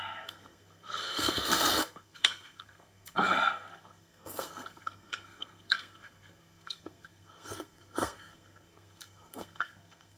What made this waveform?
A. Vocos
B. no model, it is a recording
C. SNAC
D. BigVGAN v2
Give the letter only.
C